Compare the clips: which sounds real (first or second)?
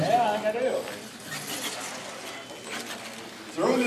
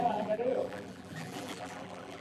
first